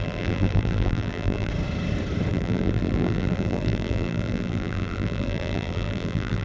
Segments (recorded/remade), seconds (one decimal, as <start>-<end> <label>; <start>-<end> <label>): 0.0-1.5 remade; 1.5-2.3 recorded; 2.3-6.4 remade